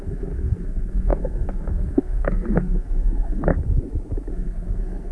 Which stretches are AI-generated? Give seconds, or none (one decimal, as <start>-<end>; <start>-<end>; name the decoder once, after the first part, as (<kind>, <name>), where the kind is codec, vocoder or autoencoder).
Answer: 0.0-3.5 (codec, SNAC); 4.3-5.1